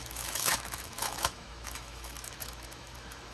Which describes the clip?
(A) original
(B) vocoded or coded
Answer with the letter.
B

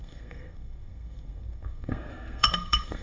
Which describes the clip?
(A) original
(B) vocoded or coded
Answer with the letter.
B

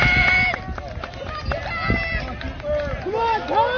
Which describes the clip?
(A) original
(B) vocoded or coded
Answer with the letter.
A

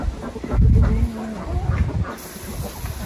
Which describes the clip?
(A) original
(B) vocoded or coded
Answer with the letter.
A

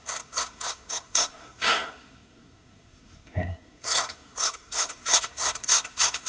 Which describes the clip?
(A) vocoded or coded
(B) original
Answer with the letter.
A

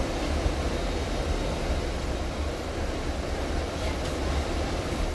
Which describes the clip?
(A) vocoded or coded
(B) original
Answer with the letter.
A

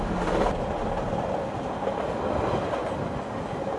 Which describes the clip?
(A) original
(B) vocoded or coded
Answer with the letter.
A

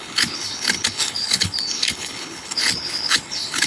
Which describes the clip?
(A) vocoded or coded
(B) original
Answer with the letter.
A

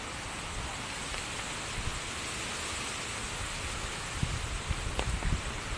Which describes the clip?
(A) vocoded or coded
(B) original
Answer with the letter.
B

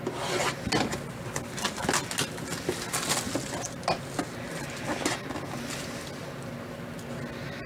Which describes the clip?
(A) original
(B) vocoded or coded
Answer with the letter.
A